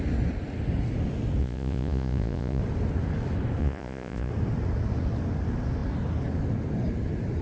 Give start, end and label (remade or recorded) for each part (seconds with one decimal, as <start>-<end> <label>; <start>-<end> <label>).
0.0-1.4 recorded; 1.4-2.6 remade; 2.6-3.6 recorded; 3.6-4.3 remade; 4.3-7.4 recorded